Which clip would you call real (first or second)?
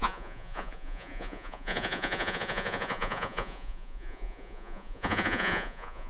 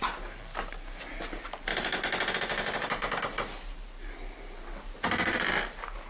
second